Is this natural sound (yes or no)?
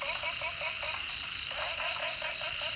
yes